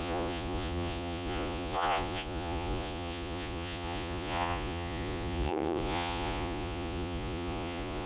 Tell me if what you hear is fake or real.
fake